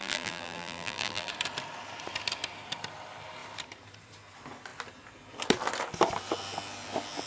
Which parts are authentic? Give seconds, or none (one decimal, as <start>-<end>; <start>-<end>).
1.3-7.3